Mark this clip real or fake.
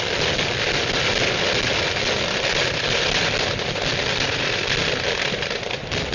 real